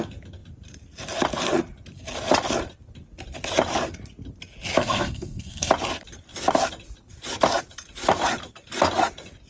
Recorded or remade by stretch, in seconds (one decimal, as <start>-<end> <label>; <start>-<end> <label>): 0.0-4.8 recorded; 4.8-5.7 remade; 5.7-9.5 recorded

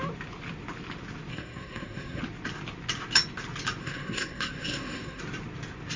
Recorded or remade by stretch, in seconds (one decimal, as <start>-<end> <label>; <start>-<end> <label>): 0.0-1.3 recorded; 1.3-2.2 remade; 2.2-3.8 recorded; 3.8-5.2 remade; 5.2-6.0 recorded

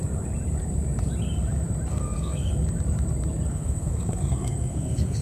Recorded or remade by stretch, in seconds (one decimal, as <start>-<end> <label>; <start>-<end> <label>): 0.0-1.9 recorded; 1.9-2.5 remade; 2.5-3.5 recorded; 3.5-5.2 remade

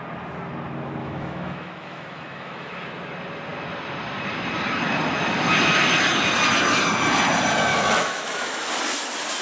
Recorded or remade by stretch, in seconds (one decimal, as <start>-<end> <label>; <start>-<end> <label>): 0.0-1.0 recorded; 1.0-2.7 remade; 2.7-7.7 recorded; 7.7-8.7 remade; 8.7-9.4 recorded

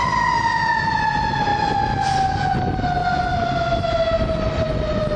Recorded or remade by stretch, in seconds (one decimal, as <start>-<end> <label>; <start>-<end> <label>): 0.0-5.2 recorded

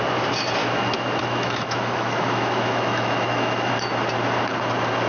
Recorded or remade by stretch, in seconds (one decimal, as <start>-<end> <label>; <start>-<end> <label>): 0.0-0.6 recorded; 0.6-3.7 remade; 3.7-5.1 recorded